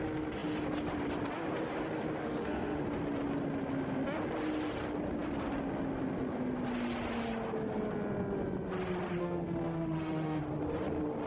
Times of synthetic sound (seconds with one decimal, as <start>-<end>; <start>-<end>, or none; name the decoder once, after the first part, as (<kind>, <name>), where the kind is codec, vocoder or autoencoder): 2.2-2.8 (autoencoder, DAC-VAE); 9.2-10.4